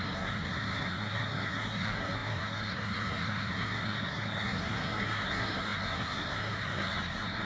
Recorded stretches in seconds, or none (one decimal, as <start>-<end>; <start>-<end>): none